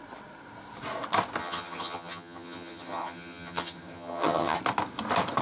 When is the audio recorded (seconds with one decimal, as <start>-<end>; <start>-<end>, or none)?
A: 0.0-1.4; 4.6-5.4

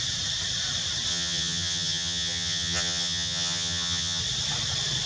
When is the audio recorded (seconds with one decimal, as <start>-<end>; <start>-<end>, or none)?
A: 0.0-1.1; 4.2-5.1

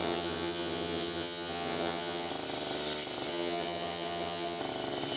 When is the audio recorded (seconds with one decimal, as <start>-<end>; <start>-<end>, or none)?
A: 2.3-3.3; 4.6-5.2

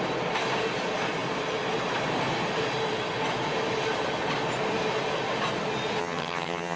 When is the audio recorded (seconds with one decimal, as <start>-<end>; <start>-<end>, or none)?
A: 0.0-6.0

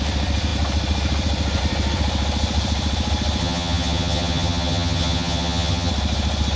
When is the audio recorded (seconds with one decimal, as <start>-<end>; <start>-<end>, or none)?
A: 0.0-3.4; 5.9-6.6

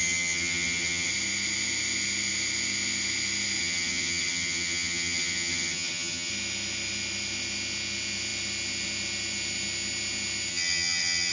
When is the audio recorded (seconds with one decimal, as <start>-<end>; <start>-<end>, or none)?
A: 1.1-3.6; 6.3-10.5